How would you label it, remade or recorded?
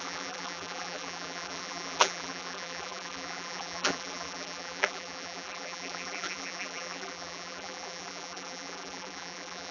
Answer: remade